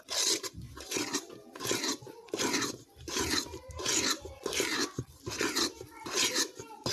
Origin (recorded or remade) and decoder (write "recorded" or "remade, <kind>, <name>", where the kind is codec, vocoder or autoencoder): recorded